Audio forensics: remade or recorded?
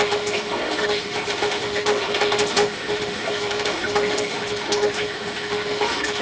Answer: remade